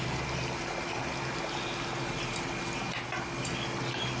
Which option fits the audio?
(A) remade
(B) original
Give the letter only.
B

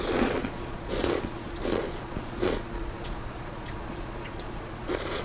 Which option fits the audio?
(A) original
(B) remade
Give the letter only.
B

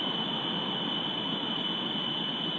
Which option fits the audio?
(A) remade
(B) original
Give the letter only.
B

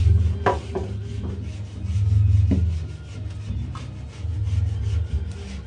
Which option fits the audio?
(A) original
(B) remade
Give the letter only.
A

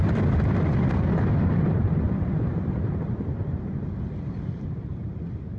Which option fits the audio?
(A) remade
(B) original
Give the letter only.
B